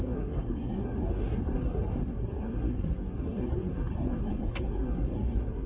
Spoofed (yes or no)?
yes